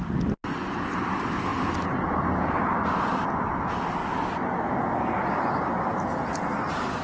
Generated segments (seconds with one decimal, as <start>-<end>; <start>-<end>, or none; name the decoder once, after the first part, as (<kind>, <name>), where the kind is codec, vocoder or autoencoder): none